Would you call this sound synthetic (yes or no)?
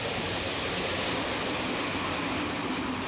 no